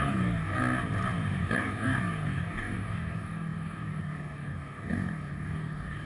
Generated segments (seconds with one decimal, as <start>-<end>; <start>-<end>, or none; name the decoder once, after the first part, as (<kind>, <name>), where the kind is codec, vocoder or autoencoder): 0.0-0.6 (codec, DAC); 1.4-6.1